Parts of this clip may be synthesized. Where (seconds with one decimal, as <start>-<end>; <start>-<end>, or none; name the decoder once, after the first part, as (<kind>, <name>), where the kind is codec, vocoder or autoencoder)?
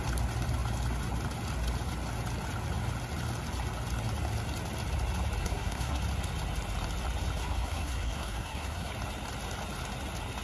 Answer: 5.4-6.0 (codec, SNAC); 7.4-8.9